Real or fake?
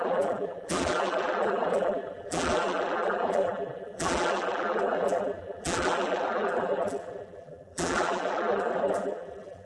fake